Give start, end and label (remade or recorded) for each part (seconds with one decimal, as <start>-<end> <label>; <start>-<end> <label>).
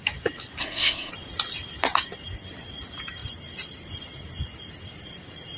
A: 0.0-0.6 recorded; 0.6-1.1 remade; 1.1-5.6 recorded